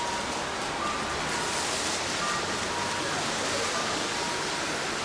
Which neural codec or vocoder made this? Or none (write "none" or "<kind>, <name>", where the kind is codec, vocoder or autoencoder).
none